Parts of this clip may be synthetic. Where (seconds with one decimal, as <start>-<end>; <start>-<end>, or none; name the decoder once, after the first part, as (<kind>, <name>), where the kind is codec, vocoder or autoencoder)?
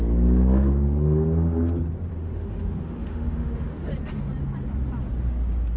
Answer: 2.1-3.9 (autoencoder, DAC-VAE)